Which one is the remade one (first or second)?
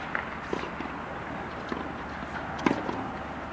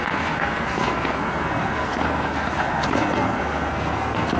second